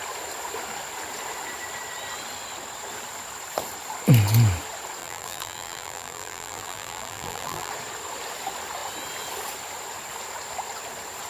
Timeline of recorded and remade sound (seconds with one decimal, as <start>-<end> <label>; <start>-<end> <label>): 0.0-5.0 recorded; 5.0-7.7 remade; 7.7-11.3 recorded